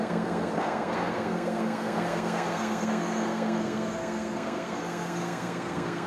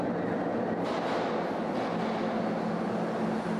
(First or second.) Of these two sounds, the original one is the second